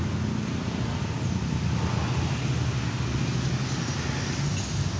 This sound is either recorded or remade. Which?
recorded